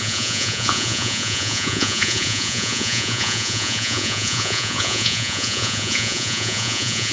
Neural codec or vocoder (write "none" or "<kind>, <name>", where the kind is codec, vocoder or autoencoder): vocoder, Vocos